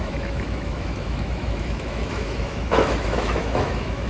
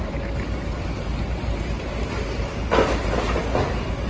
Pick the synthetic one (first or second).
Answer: first